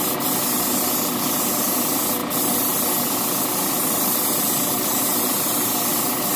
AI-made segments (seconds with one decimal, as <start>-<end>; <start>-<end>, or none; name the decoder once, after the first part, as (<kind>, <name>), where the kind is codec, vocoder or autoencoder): none